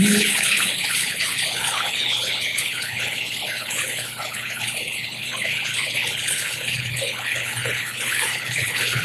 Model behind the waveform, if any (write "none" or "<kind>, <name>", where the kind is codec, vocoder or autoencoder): codec, HILCodec